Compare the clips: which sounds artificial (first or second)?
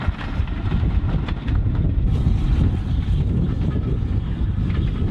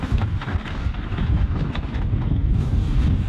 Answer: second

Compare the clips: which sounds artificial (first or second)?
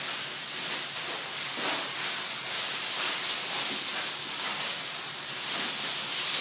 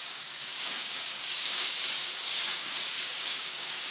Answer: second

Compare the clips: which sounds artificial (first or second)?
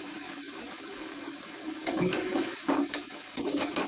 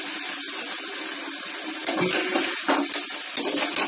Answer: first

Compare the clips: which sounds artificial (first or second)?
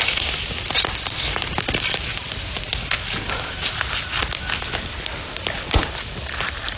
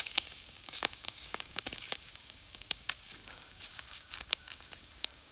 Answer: second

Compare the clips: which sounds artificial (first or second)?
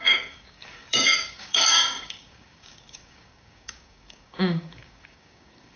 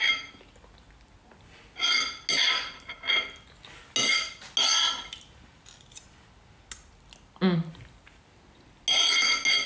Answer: first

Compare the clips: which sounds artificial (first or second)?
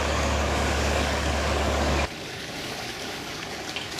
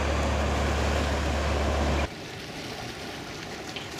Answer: first